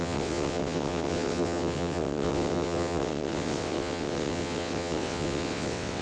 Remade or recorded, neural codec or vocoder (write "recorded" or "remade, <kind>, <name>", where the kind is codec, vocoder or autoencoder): remade, vocoder, WaveNeXt